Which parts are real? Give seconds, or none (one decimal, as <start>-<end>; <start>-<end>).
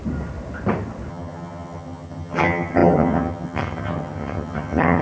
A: 0.0-1.1